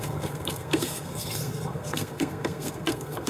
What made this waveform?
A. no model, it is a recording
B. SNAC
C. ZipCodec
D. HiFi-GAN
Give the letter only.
B